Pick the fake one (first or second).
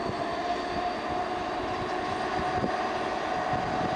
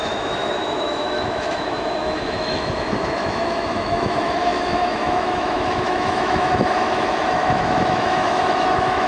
second